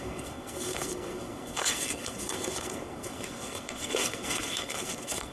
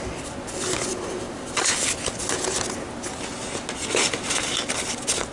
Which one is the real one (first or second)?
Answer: second